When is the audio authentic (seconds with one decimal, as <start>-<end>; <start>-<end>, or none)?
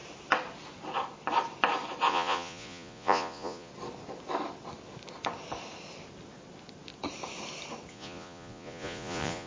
0.0-2.1; 3.7-7.9